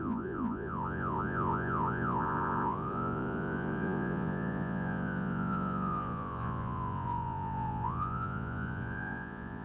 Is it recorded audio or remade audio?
remade